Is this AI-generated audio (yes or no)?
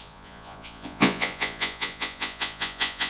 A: yes